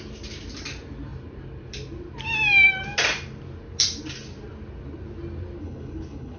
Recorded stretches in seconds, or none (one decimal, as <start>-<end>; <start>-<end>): 0.0-5.6